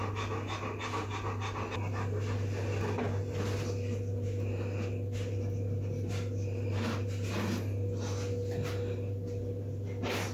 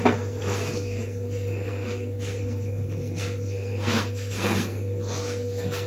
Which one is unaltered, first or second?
first